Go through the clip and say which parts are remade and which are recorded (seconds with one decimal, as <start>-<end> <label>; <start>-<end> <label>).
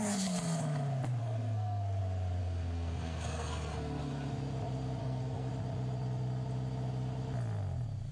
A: 0.0-1.2 recorded; 1.2-2.0 remade; 2.0-2.4 recorded; 2.4-4.1 remade; 4.1-5.0 recorded; 5.0-5.5 remade; 5.5-8.1 recorded